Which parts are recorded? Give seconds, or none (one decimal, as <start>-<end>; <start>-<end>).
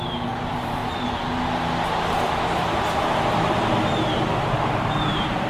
0.8-3.9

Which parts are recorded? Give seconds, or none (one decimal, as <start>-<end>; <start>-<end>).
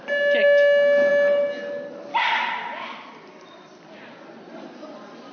0.0-5.3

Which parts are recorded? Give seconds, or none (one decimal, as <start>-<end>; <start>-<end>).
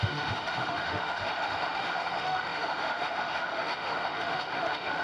none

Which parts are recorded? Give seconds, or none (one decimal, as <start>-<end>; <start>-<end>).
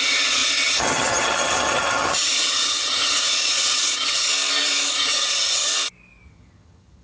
4.3-4.9; 5.7-6.3